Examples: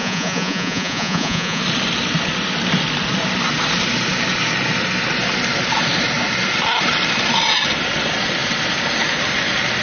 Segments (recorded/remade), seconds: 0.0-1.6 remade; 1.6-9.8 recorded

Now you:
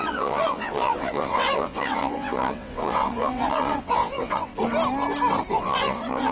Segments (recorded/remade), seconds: 0.0-4.5 remade; 4.5-5.6 recorded; 5.6-6.3 remade

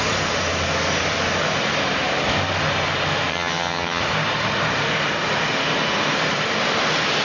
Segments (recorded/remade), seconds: 0.0-3.3 recorded; 3.3-4.0 remade; 4.0-7.2 recorded

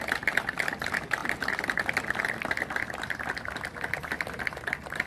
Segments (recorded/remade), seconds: 0.0-5.1 recorded

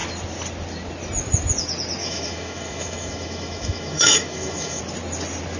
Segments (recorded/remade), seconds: 0.0-2.0 recorded; 2.0-4.8 remade; 4.8-5.6 recorded

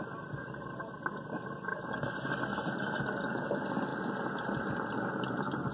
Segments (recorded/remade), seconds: 0.0-5.7 recorded

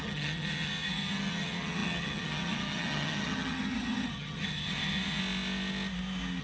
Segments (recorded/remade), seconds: 0.0-5.2 remade; 5.2-6.4 recorded